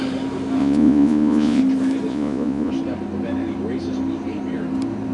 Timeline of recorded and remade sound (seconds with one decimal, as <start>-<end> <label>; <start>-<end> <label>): 0.0-0.6 recorded; 0.6-1.6 remade; 1.6-2.1 recorded; 2.1-2.7 remade; 2.7-5.1 recorded